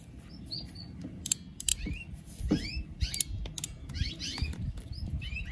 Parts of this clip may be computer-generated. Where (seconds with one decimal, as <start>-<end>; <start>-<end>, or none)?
1.7-2.2; 4.3-5.1